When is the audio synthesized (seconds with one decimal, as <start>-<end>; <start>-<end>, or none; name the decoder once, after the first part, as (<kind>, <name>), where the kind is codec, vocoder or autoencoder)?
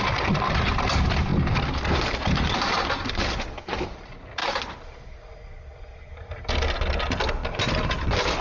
none